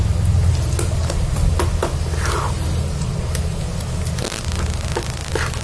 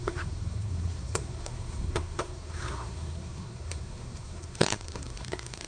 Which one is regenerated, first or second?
second